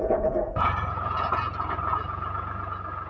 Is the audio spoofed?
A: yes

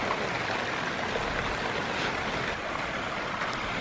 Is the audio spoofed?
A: no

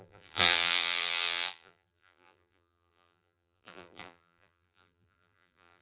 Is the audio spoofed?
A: yes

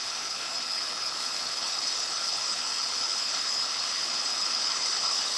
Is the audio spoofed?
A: yes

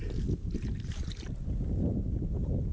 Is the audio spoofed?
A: no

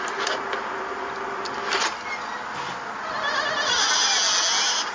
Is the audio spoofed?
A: no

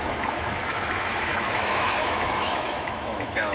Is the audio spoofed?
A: yes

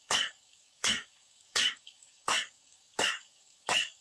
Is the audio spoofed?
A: yes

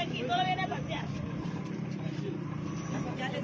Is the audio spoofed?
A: no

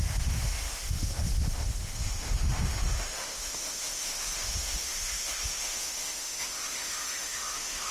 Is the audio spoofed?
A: yes